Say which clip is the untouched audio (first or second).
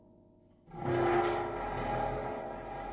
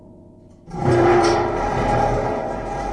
first